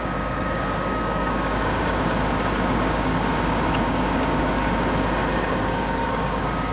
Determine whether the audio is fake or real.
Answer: fake